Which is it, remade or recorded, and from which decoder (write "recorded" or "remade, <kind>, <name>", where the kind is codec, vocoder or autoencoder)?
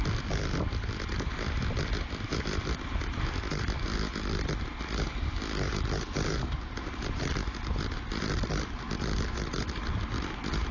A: recorded